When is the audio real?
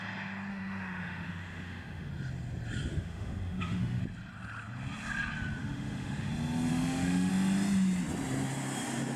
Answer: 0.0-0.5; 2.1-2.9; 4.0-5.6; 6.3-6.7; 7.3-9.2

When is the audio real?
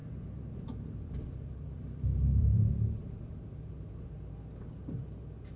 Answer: 3.4-5.6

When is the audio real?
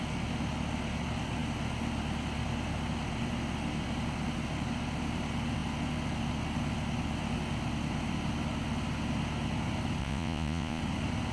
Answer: 0.0-10.0; 10.8-11.3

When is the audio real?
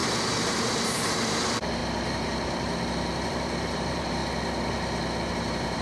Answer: 0.0-0.7; 4.2-5.3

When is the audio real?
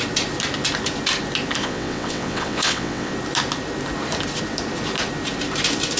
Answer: 0.0-1.6; 3.1-6.0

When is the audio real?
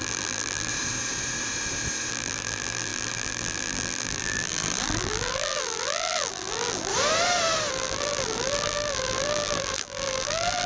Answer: 0.7-2.1; 6.9-7.7